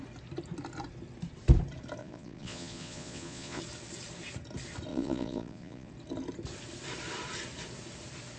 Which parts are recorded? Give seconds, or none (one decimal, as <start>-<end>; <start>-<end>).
0.0-2.0; 3.6-4.9; 5.9-8.4